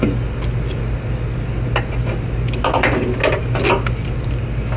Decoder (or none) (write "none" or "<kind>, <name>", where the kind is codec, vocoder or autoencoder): none